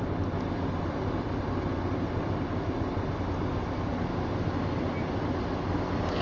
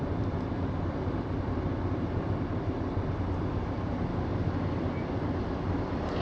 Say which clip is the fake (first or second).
second